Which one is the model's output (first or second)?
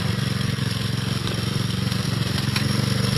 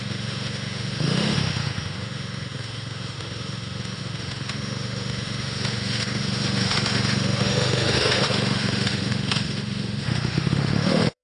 second